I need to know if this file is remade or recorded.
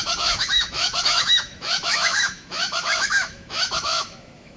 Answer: remade